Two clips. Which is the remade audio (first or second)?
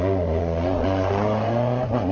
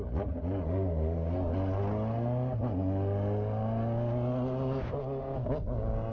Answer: first